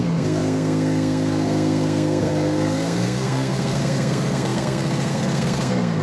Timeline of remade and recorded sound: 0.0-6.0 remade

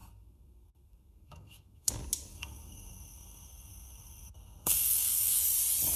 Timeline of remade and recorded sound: 0.0-1.9 remade; 1.9-2.3 recorded; 2.3-5.4 remade; 5.4-6.0 recorded

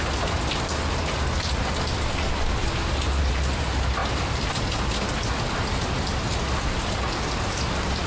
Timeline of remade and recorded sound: 0.0-8.1 recorded

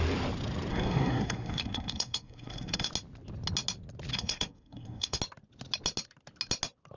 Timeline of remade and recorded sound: 0.0-0.7 recorded; 0.7-2.9 remade; 2.9-4.1 recorded; 4.1-5.2 remade; 5.2-7.0 recorded

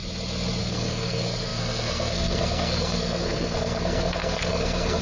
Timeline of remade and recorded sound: 0.0-0.6 recorded; 0.6-5.0 remade

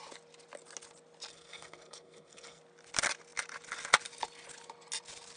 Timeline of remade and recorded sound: 0.0-1.3 recorded; 1.3-2.6 remade; 2.6-5.4 recorded

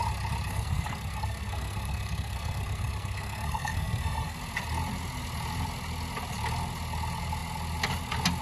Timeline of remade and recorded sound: 0.0-0.5 recorded; 0.5-4.4 remade; 4.4-8.4 recorded

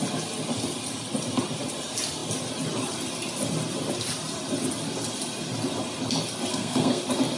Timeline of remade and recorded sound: 0.0-6.5 recorded; 6.5-7.0 remade; 7.0-7.4 recorded